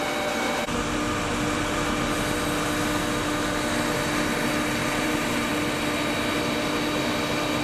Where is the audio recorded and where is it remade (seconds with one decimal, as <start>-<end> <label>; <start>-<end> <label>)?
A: 0.0-4.8 recorded; 4.8-5.5 remade; 5.5-7.6 recorded

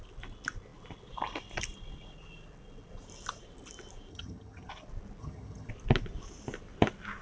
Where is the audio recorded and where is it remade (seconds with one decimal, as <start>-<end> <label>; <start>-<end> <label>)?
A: 0.0-4.1 recorded; 4.1-4.7 remade; 4.7-5.2 recorded; 5.2-5.7 remade; 5.7-7.2 recorded

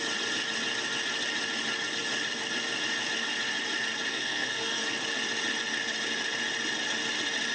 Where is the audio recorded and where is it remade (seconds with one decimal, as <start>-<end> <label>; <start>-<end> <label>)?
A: 0.0-4.1 recorded; 4.1-4.9 remade; 4.9-7.5 recorded

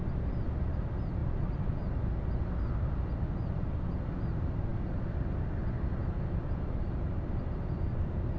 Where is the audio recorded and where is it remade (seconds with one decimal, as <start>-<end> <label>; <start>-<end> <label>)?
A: 0.0-1.2 recorded; 1.2-1.7 remade; 1.7-8.4 recorded

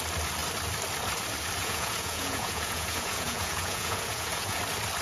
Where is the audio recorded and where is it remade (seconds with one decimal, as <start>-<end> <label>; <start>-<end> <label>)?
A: 0.0-1.6 recorded; 1.6-4.6 remade; 4.6-5.0 recorded

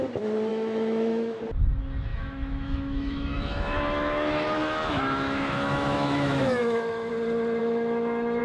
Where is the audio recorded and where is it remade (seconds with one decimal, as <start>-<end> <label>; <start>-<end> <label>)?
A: 0.0-0.5 recorded; 0.5-1.4 remade; 1.4-2.1 recorded; 2.1-7.1 remade; 7.1-7.6 recorded; 7.6-8.4 remade

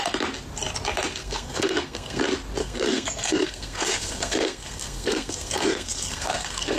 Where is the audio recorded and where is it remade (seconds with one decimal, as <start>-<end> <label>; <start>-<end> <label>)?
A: 0.0-1.2 recorded; 1.2-2.2 remade; 2.2-2.6 recorded; 2.6-6.8 remade